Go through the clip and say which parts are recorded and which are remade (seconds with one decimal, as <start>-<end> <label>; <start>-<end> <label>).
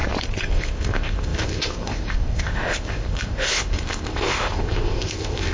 0.0-0.5 recorded; 0.5-5.5 remade